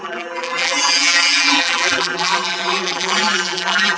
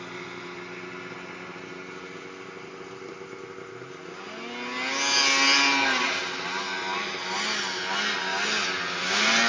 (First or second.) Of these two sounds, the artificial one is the first